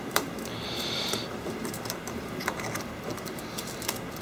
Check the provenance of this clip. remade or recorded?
remade